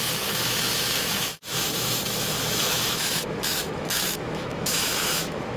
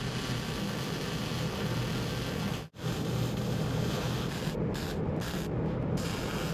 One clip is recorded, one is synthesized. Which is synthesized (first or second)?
first